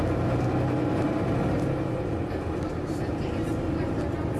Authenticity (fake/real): real